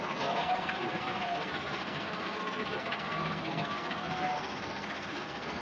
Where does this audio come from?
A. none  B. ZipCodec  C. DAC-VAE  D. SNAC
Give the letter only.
D